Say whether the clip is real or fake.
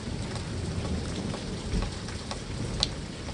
real